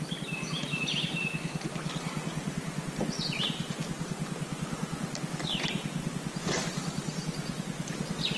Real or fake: real